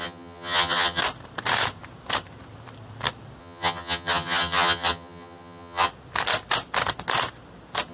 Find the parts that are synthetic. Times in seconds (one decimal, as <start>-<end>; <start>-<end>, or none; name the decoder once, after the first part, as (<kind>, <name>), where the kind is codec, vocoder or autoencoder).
0.0-1.0 (vocoder, HiFi-GAN); 3.4-5.9